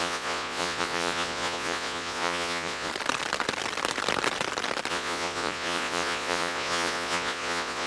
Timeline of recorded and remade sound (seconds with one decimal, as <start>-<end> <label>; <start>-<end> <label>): 0.0-2.9 remade; 2.9-4.9 recorded; 4.9-7.9 remade